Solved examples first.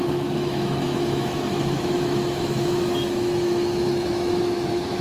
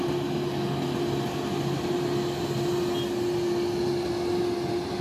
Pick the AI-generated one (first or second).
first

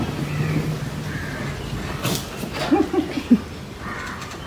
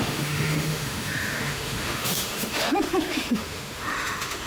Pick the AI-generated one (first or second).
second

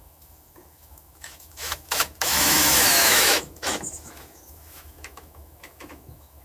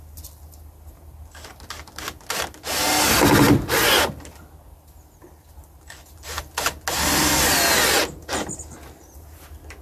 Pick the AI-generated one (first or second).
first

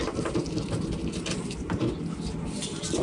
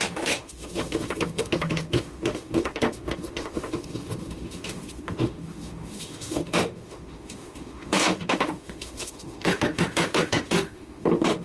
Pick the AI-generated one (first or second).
second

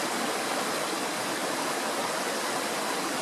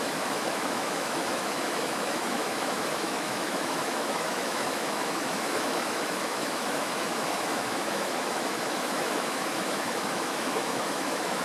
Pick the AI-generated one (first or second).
second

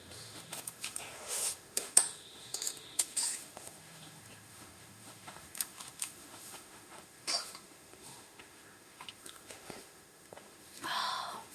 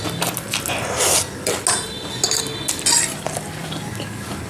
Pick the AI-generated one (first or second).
first